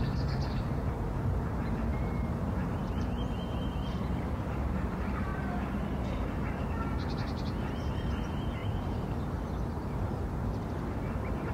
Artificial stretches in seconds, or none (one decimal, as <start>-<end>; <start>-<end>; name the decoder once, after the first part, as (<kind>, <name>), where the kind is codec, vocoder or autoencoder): 0.0-11.5 (vocoder, BigVGAN v2)